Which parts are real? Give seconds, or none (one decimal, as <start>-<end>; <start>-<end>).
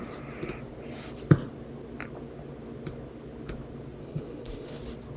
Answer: 0.0-4.0; 4.8-5.2